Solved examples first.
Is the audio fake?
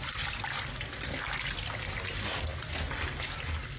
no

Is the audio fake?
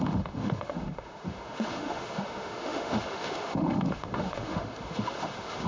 yes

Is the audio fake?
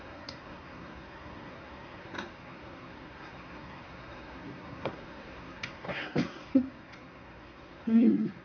yes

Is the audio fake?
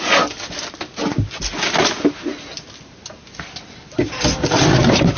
no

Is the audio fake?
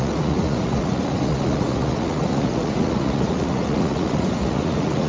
yes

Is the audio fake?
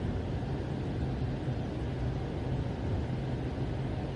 no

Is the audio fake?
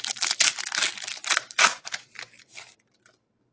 no